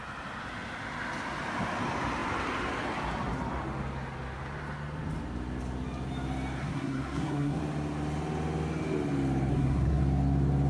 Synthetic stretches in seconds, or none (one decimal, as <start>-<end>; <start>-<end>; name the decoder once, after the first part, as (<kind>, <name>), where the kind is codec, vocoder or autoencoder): 6.6-7.6 (codec, SNAC); 9.5-10.0